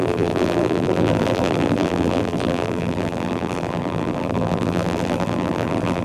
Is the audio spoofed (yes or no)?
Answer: yes